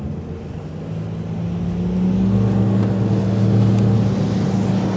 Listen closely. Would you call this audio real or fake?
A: real